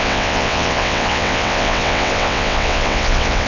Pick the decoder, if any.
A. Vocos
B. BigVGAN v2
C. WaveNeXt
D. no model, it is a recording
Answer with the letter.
C